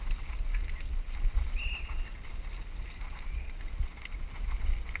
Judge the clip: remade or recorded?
recorded